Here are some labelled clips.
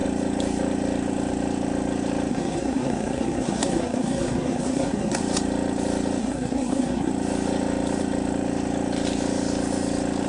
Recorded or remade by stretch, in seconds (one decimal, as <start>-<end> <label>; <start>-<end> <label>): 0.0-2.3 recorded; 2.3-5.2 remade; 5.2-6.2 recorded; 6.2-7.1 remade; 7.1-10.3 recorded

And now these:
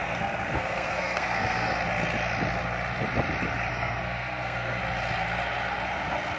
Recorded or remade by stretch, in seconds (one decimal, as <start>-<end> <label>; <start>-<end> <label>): 0.0-1.7 remade; 1.7-3.7 recorded; 3.7-4.8 remade; 4.8-6.4 recorded

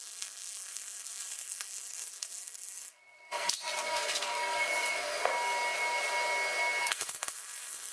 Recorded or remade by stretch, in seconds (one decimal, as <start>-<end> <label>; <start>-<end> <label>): 0.0-5.3 remade; 5.3-6.8 recorded; 6.8-7.9 remade